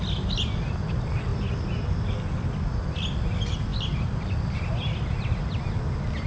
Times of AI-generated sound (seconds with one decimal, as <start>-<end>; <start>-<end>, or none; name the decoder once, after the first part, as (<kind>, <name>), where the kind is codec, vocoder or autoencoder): none